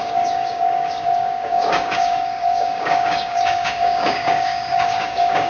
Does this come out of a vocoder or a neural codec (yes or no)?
yes